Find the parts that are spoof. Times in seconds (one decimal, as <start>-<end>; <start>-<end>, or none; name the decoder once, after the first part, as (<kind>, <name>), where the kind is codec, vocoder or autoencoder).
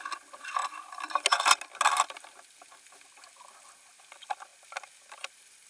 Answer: none